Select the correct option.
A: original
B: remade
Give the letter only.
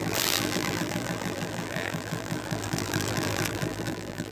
B